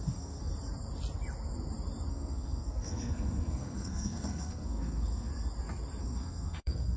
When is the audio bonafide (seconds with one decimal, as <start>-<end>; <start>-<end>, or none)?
0.5-2.1; 5.3-6.0